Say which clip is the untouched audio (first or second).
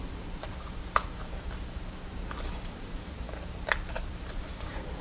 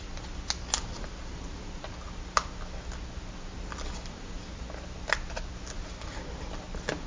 second